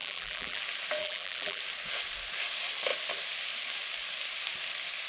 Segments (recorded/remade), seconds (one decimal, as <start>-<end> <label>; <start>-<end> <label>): 0.0-0.6 remade; 0.6-1.0 recorded; 1.0-1.6 remade; 1.6-5.1 recorded